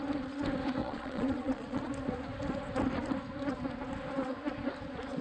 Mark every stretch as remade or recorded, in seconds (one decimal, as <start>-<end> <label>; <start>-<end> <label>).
0.0-0.8 recorded; 0.8-1.9 remade; 1.9-5.2 recorded